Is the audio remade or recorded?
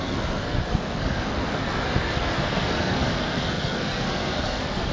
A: remade